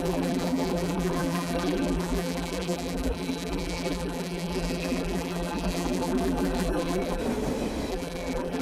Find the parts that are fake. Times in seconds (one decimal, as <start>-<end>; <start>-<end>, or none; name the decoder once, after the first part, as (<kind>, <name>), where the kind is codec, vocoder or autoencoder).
0.0-7.2 (vocoder, BigVGAN v2); 7.9-8.6